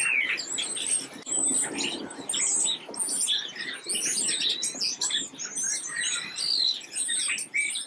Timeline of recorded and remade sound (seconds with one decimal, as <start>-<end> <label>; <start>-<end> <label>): 0.0-7.9 recorded